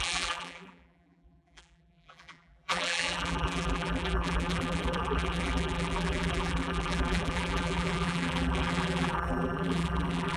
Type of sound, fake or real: fake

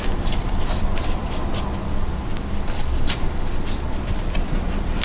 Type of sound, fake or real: real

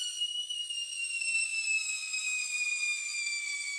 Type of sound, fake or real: real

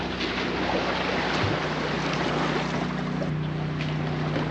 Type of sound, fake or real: real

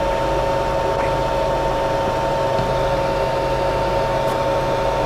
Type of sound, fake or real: real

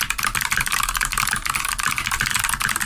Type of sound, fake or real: fake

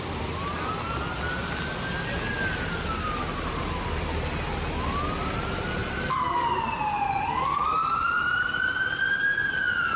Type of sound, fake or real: real